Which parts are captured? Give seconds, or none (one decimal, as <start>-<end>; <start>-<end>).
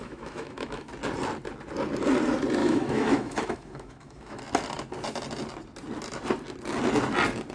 0.9-2.6; 4.4-7.5